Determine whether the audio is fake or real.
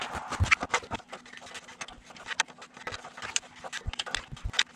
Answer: real